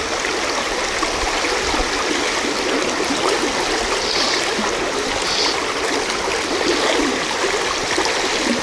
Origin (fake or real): real